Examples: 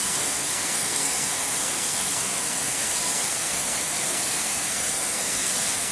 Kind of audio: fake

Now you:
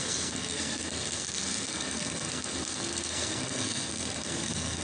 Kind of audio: fake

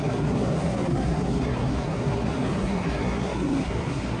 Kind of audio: fake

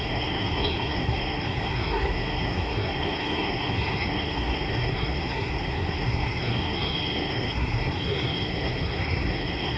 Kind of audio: fake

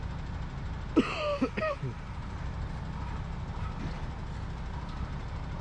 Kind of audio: real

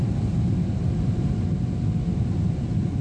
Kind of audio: real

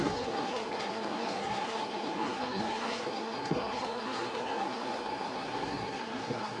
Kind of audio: fake